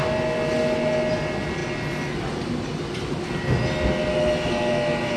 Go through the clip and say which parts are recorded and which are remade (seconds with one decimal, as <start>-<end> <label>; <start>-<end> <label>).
0.0-5.2 recorded